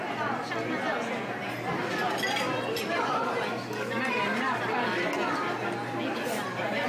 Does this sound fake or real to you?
real